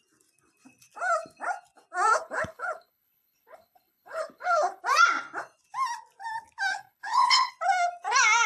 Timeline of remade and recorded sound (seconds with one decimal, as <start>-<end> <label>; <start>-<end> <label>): 0.0-2.1 recorded; 2.1-4.8 remade; 4.8-6.7 recorded; 6.7-7.5 remade; 7.5-8.5 recorded